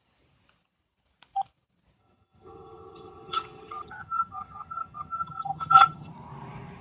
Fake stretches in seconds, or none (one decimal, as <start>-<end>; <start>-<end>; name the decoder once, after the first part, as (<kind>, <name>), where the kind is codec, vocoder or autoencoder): 2.0-6.1 (vocoder, HiFi-GAN)